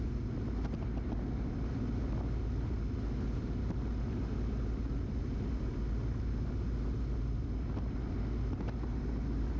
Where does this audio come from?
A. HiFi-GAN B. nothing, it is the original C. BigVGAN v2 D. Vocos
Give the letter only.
B